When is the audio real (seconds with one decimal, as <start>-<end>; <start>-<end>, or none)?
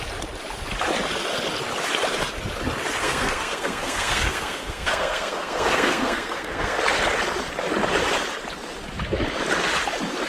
0.0-3.0; 6.8-10.3